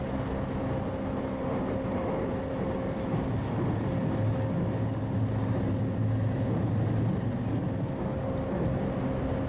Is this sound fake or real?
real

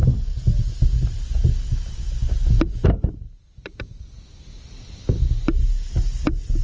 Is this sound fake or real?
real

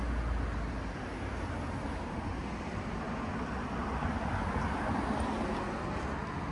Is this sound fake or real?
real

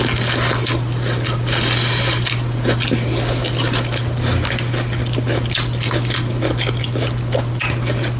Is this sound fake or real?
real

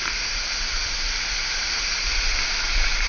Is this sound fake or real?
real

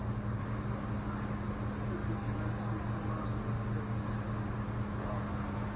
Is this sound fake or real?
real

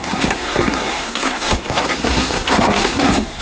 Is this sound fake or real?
fake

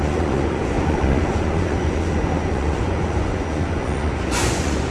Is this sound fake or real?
fake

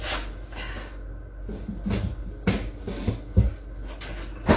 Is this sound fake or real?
real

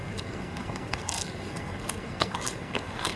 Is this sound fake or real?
fake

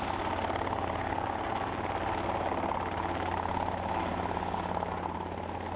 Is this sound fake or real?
real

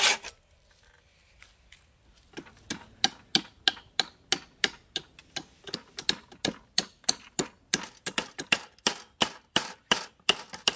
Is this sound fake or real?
real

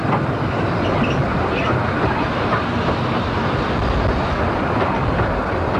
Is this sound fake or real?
real